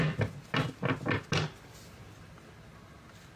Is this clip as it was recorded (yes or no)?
yes